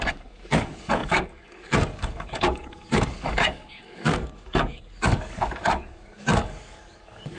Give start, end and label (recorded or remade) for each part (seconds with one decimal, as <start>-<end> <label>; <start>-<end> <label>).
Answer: 0.0-7.4 remade